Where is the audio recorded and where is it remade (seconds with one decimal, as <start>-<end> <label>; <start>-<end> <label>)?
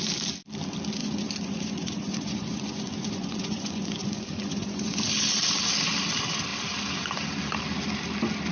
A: 0.0-1.0 recorded; 1.0-5.0 remade; 5.0-8.5 recorded